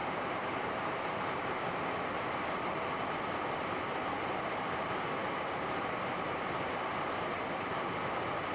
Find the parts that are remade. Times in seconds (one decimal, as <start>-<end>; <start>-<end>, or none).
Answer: 0.0-1.4; 5.2-6.9

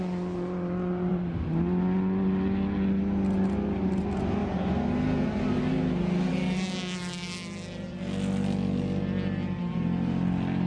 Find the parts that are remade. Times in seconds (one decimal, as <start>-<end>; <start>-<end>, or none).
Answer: none

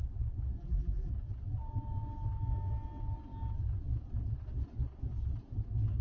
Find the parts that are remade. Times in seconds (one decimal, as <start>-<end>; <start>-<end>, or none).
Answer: 0.6-1.1